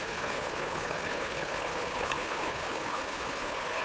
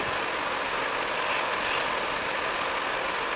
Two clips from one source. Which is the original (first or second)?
second